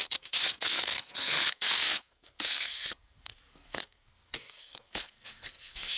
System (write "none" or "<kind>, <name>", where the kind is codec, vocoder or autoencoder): codec, SNAC